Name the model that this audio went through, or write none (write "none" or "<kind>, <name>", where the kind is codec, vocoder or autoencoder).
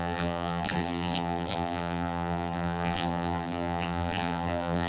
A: vocoder, BigVGAN v2